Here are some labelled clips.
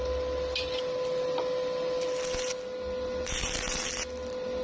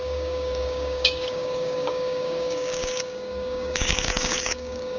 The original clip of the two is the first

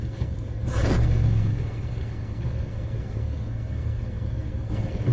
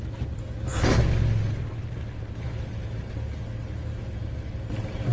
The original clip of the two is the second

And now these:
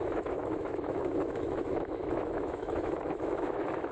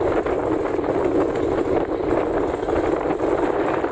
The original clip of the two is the second